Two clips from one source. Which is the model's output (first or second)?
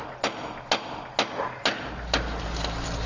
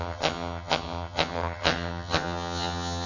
second